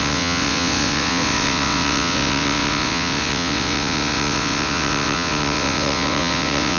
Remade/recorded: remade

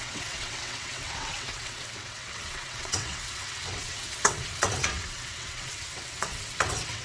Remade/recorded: remade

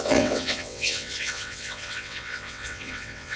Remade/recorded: remade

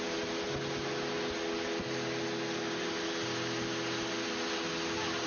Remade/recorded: recorded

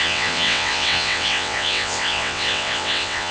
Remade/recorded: remade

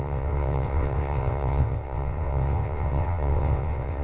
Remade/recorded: remade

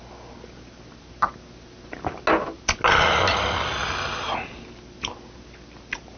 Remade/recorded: recorded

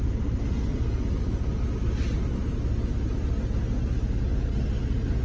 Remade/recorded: recorded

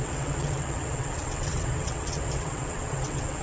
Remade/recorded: remade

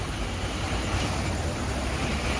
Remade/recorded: recorded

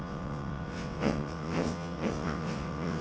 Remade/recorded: remade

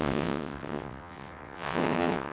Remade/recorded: remade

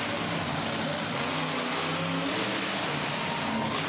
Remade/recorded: recorded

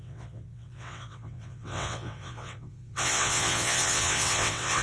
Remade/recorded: remade